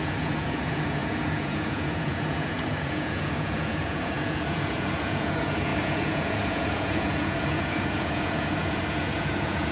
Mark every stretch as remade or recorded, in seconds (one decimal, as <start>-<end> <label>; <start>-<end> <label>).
0.0-9.7 remade